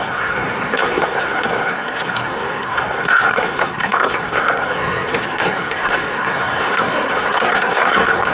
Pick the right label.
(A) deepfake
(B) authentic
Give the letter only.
A